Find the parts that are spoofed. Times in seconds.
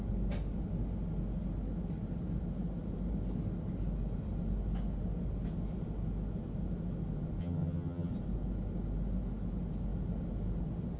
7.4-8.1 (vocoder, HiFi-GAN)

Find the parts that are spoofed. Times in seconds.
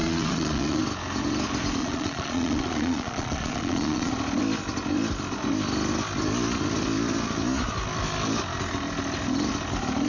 0.0-0.8 (vocoder, Vocos); 1.8-4.1